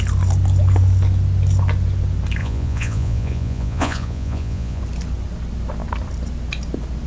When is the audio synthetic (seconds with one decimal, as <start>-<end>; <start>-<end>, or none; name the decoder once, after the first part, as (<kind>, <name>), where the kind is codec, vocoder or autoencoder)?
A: 2.4-4.8 (vocoder, Vocos)